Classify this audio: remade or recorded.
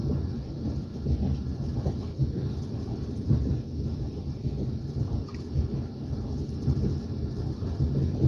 recorded